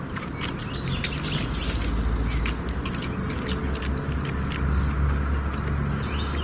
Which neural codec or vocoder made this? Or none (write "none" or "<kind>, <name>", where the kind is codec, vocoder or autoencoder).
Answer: none